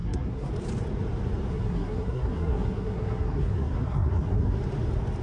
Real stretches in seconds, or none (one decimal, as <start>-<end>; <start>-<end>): 0.5-1.5; 4.6-5.2